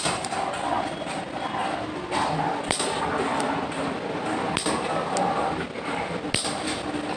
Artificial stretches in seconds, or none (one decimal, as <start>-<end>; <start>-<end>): none